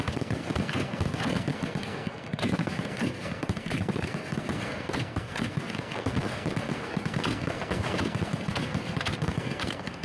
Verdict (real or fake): fake